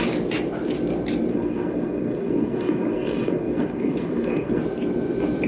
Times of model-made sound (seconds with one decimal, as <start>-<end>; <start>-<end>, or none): 1.3-4.6